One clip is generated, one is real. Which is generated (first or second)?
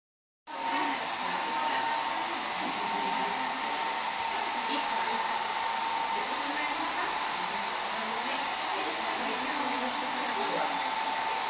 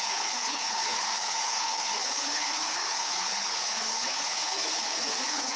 second